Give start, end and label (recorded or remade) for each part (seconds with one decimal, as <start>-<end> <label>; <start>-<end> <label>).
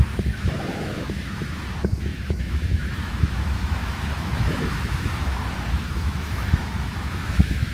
0.0-7.7 remade